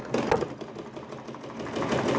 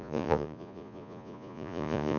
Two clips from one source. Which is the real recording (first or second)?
first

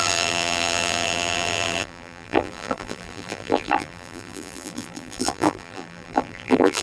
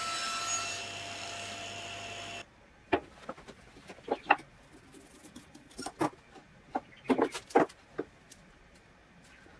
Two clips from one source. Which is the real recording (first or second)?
second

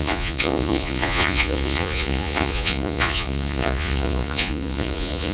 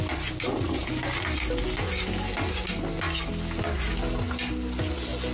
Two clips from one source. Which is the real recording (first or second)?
second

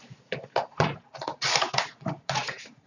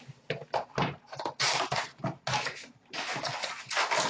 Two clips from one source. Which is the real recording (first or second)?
second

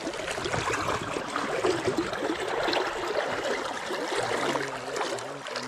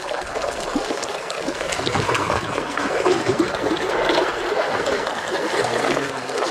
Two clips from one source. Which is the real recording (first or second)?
first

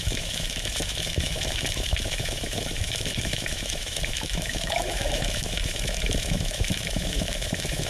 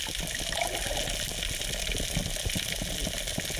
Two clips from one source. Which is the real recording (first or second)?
second